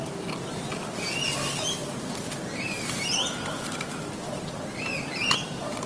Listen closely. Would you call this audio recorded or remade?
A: recorded